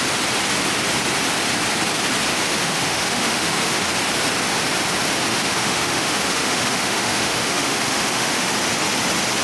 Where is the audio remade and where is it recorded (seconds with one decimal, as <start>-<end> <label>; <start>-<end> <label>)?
0.0-2.3 recorded; 2.3-3.9 remade; 3.9-5.3 recorded; 5.3-8.5 remade; 8.5-9.4 recorded